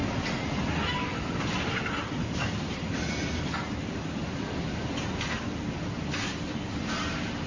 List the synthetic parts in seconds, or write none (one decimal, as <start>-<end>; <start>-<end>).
none